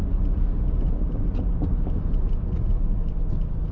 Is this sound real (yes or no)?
yes